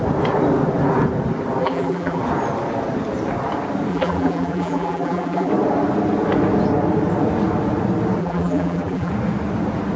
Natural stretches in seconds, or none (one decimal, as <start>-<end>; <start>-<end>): 0.0-1.6; 2.2-3.9; 5.5-8.2; 9.1-10.0